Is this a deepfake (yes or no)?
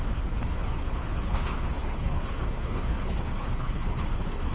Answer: yes